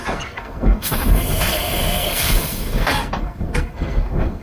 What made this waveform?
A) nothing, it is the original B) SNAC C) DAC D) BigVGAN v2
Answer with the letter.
B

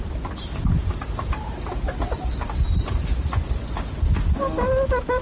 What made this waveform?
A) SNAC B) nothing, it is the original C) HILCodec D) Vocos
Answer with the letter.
B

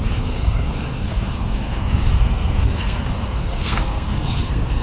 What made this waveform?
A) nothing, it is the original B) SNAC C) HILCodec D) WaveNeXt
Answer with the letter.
B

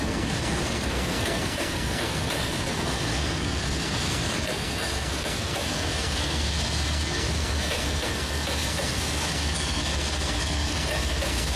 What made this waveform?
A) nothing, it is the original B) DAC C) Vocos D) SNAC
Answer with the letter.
D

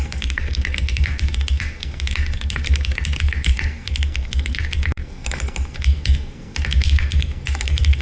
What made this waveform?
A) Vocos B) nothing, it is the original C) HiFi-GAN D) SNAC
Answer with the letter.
D